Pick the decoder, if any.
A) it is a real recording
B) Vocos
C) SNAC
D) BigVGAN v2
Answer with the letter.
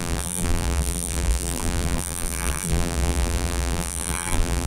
D